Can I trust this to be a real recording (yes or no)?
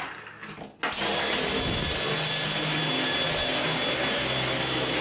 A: yes